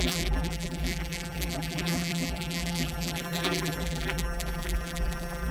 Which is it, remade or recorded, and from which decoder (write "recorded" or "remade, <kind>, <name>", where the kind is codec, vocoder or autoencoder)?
remade, vocoder, BigVGAN v2